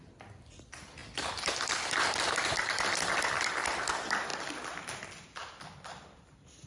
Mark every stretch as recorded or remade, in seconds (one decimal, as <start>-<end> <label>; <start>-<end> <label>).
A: 0.0-6.7 recorded